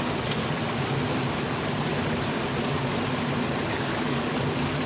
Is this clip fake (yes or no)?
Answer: no